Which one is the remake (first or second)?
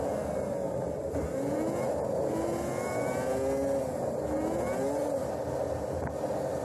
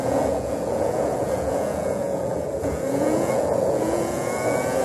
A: second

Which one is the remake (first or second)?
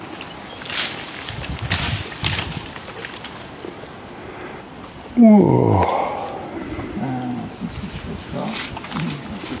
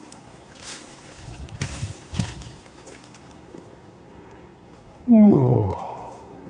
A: second